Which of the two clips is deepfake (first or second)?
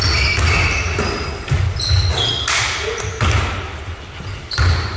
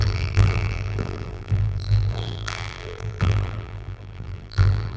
second